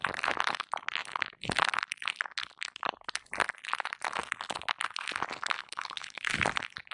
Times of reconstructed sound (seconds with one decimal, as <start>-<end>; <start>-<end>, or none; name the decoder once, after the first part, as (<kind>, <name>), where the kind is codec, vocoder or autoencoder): 5.6-6.3 (codec, HILCodec)